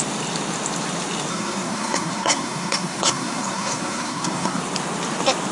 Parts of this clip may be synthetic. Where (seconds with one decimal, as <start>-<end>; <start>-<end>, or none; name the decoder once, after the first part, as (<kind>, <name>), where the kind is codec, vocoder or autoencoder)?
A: 1.3-4.6 (codec, SNAC)